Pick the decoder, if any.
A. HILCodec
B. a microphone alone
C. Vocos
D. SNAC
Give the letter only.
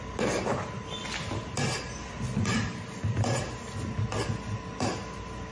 B